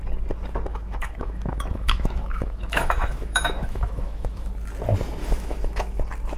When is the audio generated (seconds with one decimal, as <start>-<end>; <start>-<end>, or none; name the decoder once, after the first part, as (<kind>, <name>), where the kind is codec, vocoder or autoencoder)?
0.7-4.5 (autoencoder, DAC-VAE); 5.2-6.0